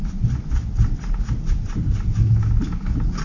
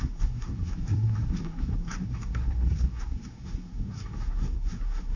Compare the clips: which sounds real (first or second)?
first